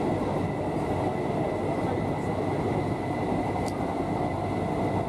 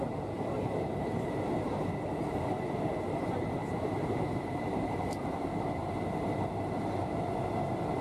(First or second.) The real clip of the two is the first